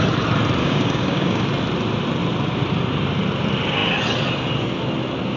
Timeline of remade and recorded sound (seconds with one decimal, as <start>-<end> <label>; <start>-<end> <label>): 0.0-0.6 recorded; 0.6-1.5 remade; 1.5-5.4 recorded